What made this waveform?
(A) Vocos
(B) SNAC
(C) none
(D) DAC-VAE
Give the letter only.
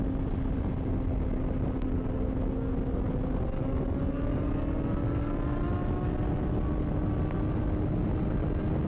C